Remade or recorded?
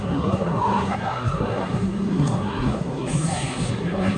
remade